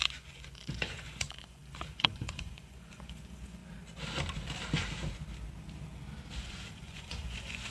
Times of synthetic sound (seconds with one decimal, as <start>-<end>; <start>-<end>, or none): 0.0-3.6; 6.4-7.7